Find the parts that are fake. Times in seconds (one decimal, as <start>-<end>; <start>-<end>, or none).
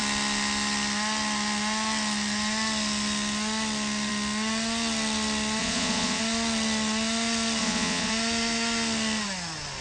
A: 5.6-6.2; 7.6-8.1